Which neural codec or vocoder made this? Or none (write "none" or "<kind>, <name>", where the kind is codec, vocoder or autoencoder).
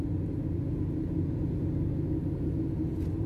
none